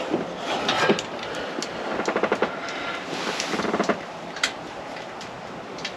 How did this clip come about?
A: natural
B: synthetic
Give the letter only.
A